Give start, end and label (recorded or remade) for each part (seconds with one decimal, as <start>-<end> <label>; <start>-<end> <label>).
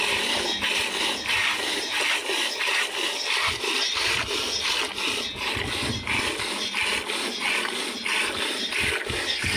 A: 0.0-9.6 recorded